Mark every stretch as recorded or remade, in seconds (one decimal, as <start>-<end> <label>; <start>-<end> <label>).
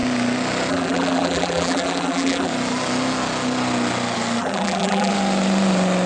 0.0-0.7 recorded; 0.7-2.5 remade; 2.5-4.4 recorded; 4.4-5.1 remade; 5.1-6.1 recorded